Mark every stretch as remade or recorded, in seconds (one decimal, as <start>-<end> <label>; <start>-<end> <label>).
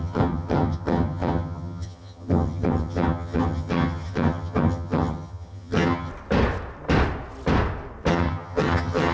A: 0.0-6.1 remade; 6.1-8.1 recorded; 8.1-9.1 remade